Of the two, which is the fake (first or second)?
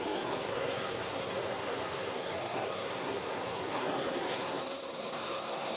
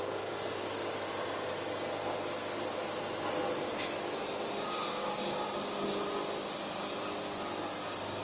first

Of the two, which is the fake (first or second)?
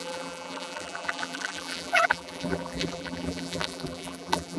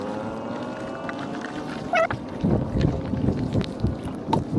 first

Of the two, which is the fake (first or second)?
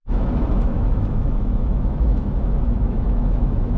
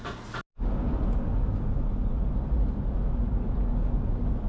first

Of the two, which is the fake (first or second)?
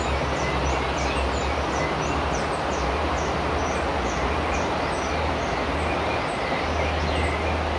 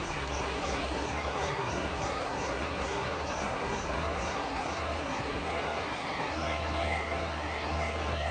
second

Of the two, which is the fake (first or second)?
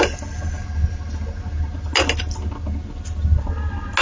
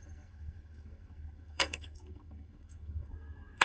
second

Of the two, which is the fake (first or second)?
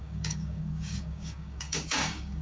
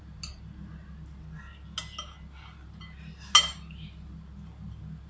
first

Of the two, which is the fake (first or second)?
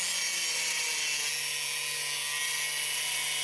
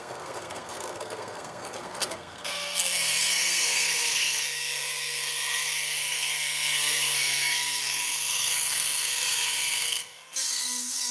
second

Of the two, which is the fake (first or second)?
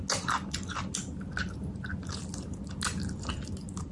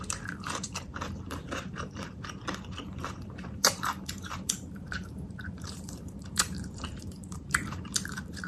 second